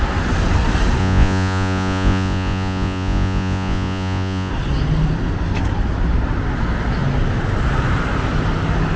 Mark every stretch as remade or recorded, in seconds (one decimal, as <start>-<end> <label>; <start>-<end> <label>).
0.0-1.0 recorded; 1.0-4.5 remade; 4.5-9.0 recorded